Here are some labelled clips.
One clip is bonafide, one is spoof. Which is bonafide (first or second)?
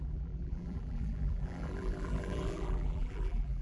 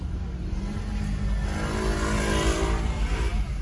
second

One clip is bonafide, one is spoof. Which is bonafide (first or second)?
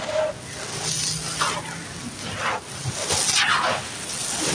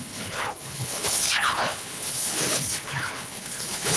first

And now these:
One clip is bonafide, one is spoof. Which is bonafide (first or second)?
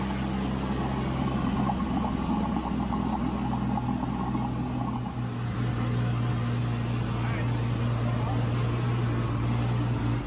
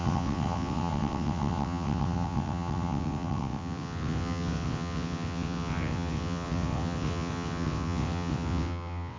first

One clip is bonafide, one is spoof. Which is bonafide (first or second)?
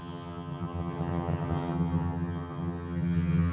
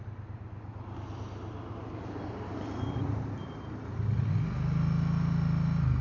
second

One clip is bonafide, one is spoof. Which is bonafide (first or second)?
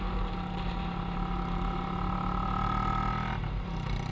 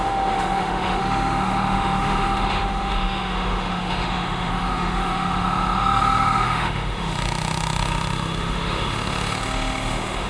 first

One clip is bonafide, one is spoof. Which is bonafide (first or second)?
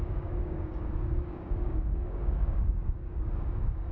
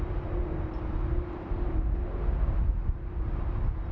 second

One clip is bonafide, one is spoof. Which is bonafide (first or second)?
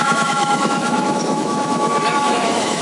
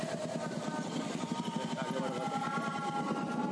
second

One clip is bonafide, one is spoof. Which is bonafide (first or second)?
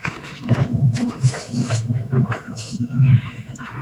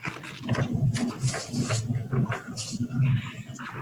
second